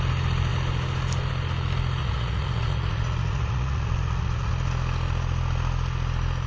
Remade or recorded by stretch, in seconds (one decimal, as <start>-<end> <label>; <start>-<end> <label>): 0.0-2.0 recorded; 2.0-4.5 remade; 4.5-6.5 recorded